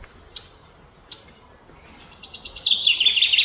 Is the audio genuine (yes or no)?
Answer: yes